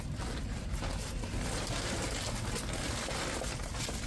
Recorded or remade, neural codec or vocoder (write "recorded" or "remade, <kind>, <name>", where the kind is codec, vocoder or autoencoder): recorded